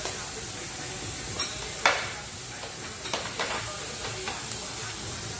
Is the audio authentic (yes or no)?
yes